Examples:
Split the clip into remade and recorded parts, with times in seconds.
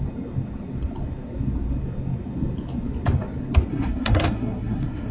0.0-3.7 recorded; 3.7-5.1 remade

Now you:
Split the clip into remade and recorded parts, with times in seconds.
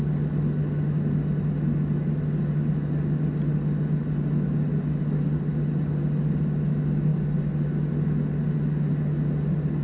0.0-9.8 recorded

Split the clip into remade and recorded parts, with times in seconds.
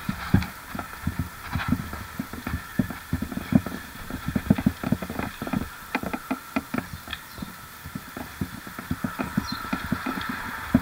0.0-0.6 remade; 0.6-7.1 recorded; 7.1-8.3 remade; 8.3-10.8 recorded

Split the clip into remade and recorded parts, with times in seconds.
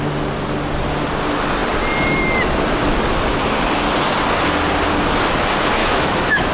0.0-5.8 recorded; 5.8-6.5 remade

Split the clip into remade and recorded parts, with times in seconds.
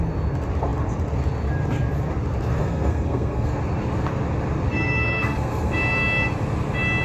0.0-2.6 recorded; 2.6-3.6 remade; 3.6-4.7 recorded; 4.7-5.7 remade; 5.7-7.0 recorded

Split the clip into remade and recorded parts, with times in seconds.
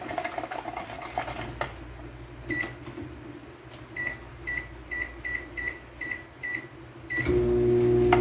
0.0-8.2 recorded